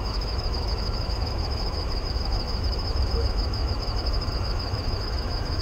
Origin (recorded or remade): remade